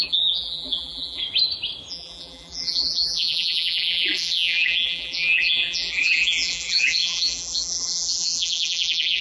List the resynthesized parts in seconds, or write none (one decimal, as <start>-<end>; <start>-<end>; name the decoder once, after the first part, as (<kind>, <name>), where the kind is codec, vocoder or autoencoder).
0.0-1.2 (vocoder, BigVGAN v2); 1.9-9.2